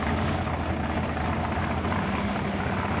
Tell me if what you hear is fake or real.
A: real